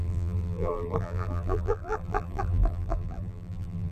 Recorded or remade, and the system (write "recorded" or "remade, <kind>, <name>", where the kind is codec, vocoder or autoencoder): remade, vocoder, BigVGAN v2